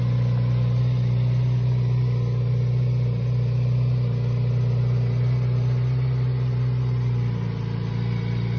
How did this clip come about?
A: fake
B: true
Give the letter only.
B